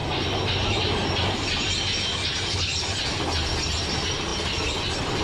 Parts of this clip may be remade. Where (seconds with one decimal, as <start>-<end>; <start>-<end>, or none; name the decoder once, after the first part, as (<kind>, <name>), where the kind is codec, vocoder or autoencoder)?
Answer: none